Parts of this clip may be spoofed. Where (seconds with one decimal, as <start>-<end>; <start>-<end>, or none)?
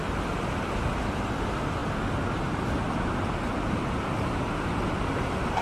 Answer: none